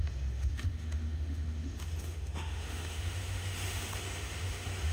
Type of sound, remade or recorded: remade